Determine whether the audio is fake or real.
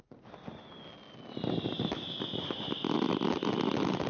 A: real